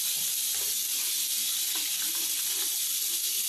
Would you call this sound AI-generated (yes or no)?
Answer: no